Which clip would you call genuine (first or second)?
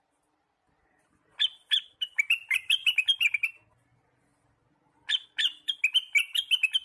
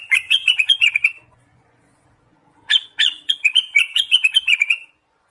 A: first